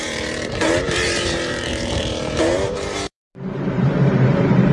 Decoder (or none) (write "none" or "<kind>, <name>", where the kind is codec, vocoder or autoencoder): vocoder, BigVGAN v2